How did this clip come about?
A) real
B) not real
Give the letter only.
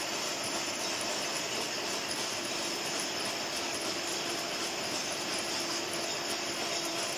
B